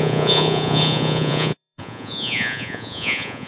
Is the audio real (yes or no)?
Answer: no